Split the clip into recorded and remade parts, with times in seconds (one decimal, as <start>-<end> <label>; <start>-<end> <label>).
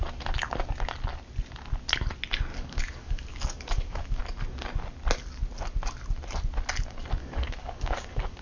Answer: 0.0-2.5 recorded; 2.5-4.2 remade; 4.2-7.2 recorded; 7.2-8.4 remade